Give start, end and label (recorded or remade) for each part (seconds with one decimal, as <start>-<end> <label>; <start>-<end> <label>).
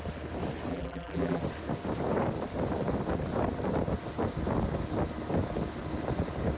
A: 0.0-0.7 recorded; 0.7-1.4 remade; 1.4-6.6 recorded